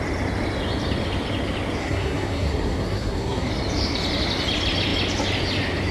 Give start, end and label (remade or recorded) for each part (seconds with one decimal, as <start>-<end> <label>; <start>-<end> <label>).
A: 0.0-1.8 recorded; 1.8-3.5 remade; 3.5-5.9 recorded